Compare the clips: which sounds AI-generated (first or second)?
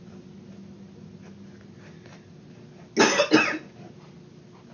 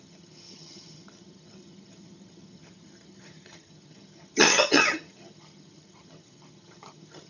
second